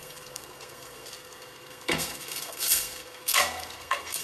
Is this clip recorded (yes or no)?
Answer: no